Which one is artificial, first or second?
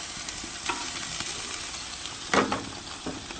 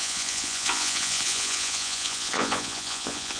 second